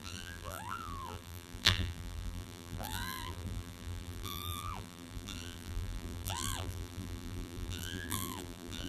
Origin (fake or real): fake